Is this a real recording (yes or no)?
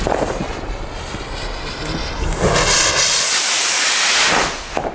yes